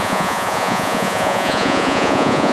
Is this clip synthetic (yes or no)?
yes